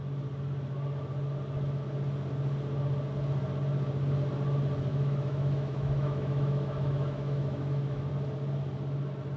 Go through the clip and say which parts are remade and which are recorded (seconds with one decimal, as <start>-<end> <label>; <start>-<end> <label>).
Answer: 0.0-4.9 recorded; 4.9-8.1 remade; 8.1-9.4 recorded